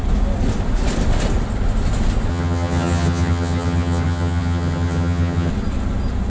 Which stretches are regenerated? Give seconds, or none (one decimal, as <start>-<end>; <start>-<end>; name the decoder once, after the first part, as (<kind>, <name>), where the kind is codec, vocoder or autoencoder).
2.3-5.5 (vocoder, HiFi-GAN)